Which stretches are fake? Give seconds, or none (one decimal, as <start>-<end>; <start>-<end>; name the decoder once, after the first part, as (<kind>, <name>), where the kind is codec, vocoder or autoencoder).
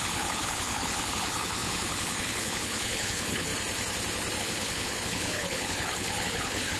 0.0-3.5 (codec, HILCodec); 4.4-6.8